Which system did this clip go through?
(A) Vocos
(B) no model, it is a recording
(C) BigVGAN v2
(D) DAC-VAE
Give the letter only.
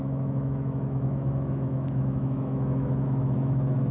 D